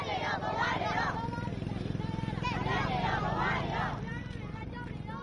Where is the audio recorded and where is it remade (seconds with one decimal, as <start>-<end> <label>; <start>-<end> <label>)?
0.0-1.5 remade; 1.5-4.6 recorded; 4.6-5.2 remade